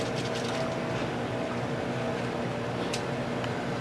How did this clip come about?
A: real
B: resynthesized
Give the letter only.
A